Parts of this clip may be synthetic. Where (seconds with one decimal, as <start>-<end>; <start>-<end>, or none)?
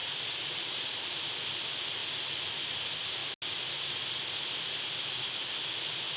none